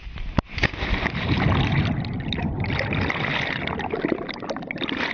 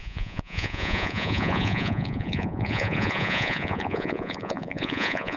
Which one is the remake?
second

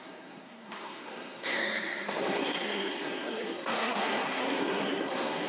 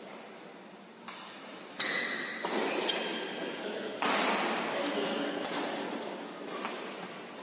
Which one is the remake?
first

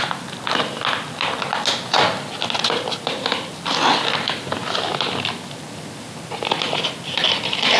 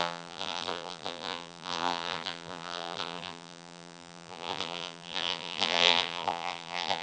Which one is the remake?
second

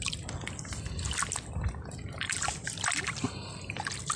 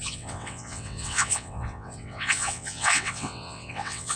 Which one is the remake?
second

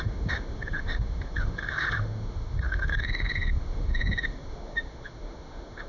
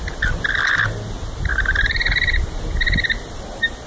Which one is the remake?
first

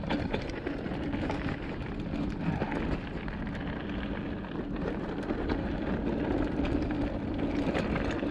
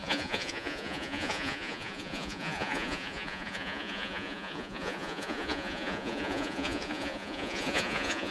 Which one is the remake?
second